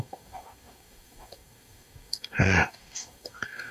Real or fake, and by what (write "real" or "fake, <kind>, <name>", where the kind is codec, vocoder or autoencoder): fake, codec, DAC